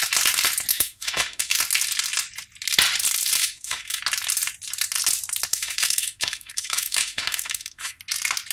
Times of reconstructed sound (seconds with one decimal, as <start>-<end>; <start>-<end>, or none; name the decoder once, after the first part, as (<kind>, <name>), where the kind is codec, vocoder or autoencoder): 0.7-1.6 (autoencoder, DAC-VAE); 3.4-4.0; 5.5-8.0